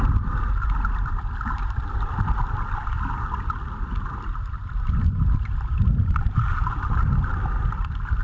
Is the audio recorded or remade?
recorded